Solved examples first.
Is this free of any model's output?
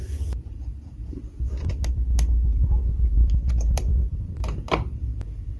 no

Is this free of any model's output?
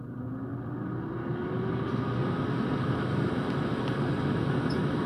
yes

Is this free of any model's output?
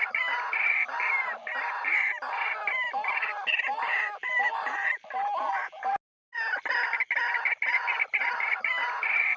yes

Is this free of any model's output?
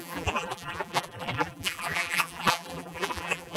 no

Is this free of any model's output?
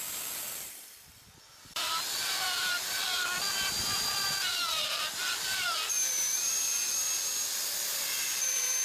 no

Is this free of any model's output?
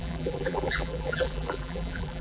no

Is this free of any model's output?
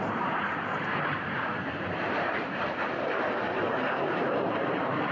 no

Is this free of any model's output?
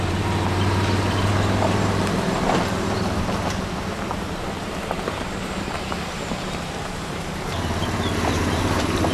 no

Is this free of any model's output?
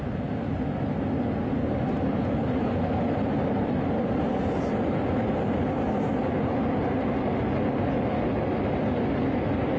yes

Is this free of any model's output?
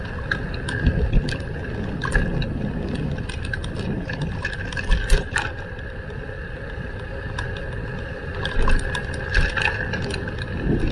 yes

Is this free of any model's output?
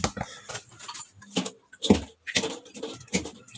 yes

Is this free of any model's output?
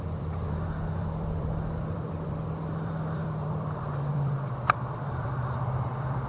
no